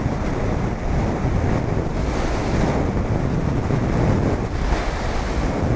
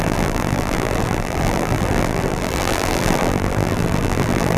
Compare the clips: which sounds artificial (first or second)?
second